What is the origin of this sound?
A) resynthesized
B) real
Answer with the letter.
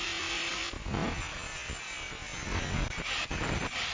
B